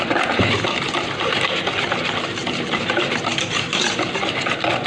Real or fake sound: real